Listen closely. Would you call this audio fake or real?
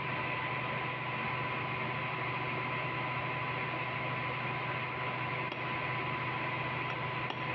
real